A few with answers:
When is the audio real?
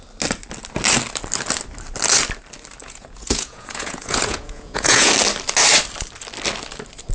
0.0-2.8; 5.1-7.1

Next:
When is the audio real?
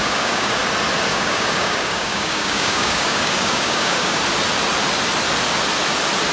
0.6-1.1; 4.2-6.3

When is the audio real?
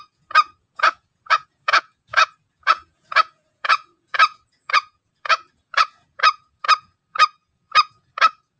none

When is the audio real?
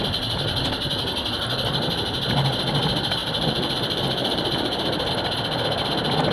0.0-3.2; 5.1-6.3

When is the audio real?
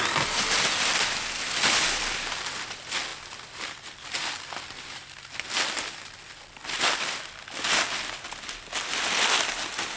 0.0-10.0